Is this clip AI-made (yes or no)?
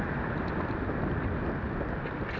no